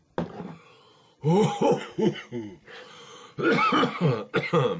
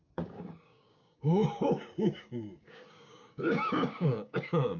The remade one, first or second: second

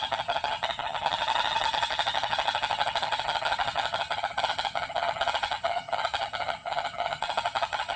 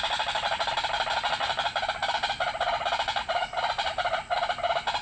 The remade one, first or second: first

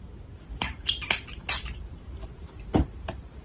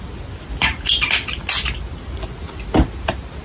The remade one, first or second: first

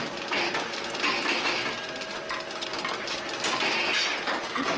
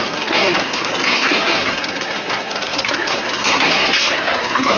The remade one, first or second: second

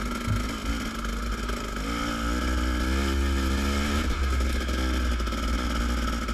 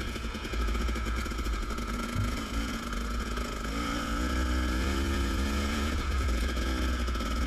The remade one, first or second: second